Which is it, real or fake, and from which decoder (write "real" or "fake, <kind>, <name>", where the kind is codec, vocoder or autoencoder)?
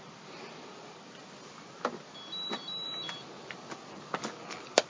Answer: real